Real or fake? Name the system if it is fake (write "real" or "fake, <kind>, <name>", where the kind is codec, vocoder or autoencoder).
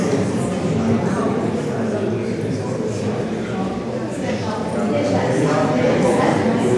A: real